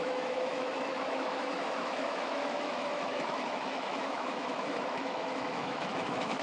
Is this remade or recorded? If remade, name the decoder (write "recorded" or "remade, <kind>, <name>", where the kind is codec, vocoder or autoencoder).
remade, autoencoder, DAC-VAE